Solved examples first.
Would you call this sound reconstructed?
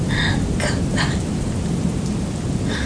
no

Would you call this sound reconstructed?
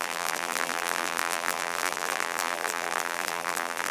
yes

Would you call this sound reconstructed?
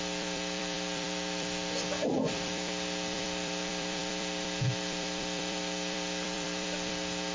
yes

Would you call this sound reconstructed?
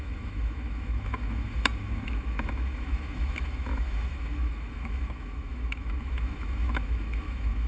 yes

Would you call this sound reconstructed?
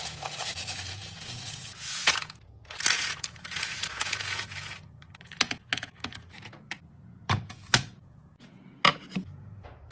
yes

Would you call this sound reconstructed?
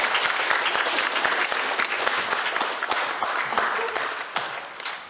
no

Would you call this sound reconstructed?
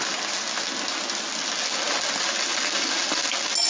no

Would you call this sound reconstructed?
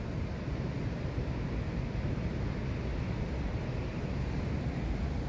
no